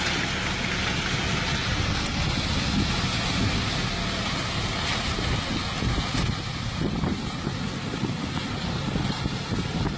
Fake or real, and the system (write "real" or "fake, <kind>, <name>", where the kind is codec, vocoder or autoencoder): real